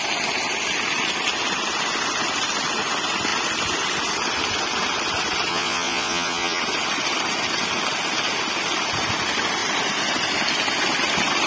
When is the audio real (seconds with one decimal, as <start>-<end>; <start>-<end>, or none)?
0.0-5.5; 6.6-11.5